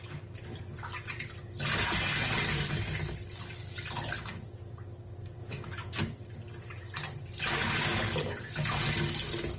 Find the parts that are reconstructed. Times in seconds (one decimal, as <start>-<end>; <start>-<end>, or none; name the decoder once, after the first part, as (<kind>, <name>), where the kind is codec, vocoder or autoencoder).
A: 5.4-6.0 (vocoder, Vocos)